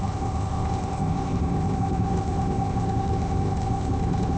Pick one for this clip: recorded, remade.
remade